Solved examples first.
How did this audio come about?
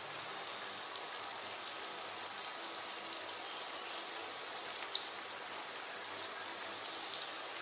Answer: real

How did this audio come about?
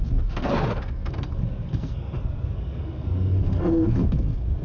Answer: fake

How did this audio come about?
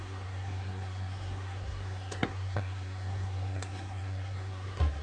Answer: fake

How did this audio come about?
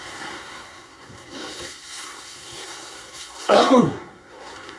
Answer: fake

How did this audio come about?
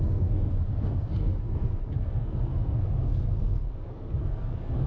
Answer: fake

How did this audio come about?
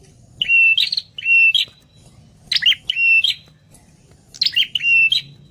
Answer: real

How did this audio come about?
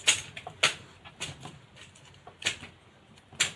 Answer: real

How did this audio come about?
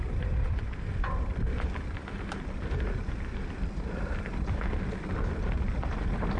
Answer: real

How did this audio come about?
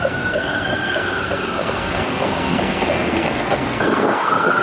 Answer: fake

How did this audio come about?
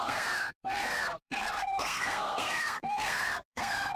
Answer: fake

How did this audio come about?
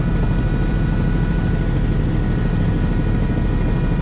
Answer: real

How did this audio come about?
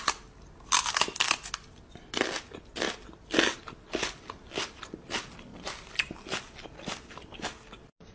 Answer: real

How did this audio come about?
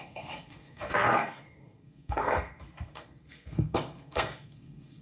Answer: fake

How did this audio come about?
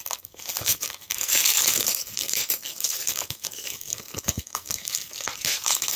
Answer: fake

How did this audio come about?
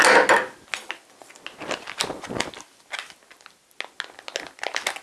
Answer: real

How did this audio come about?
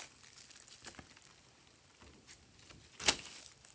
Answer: real